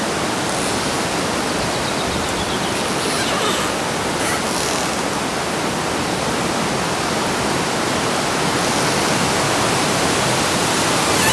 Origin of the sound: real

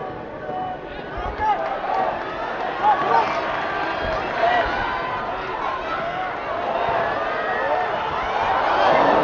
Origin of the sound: real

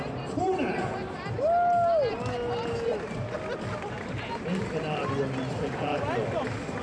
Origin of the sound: real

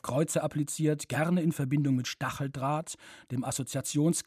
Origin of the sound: real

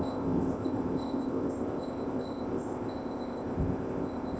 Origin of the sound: fake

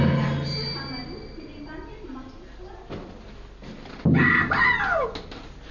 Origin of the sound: real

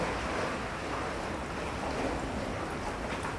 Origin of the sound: real